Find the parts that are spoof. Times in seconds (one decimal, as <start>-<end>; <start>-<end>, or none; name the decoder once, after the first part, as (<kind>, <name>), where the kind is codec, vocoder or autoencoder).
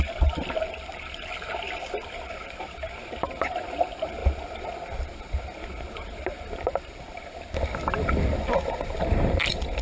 none